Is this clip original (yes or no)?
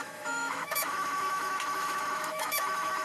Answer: no